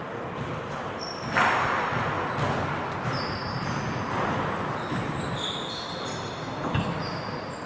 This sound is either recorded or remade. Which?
recorded